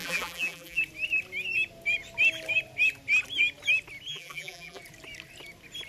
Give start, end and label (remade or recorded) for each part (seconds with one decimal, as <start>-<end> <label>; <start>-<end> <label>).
0.0-0.8 remade; 0.8-4.1 recorded; 4.1-4.8 remade; 4.8-5.9 recorded